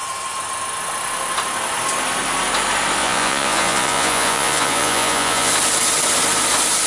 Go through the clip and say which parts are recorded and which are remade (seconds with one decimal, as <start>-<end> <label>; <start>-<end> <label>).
0.0-3.0 recorded; 3.0-5.5 remade; 5.5-6.9 recorded

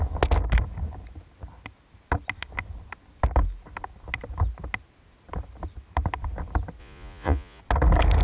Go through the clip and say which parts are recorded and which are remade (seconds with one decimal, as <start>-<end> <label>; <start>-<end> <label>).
0.0-6.8 recorded; 6.8-7.6 remade; 7.6-8.2 recorded

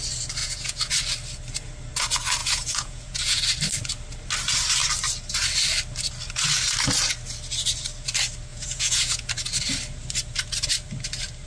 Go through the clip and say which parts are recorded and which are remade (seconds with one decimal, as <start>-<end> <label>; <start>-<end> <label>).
0.0-0.4 recorded; 0.4-0.9 remade; 0.9-2.4 recorded; 2.4-3.4 remade; 3.4-8.5 recorded; 8.5-9.3 remade; 9.3-11.5 recorded

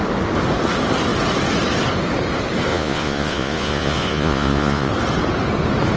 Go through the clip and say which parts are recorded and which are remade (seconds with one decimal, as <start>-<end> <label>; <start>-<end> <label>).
0.0-2.7 recorded; 2.7-4.9 remade; 4.9-6.0 recorded